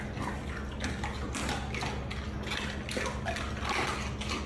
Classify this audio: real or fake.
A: real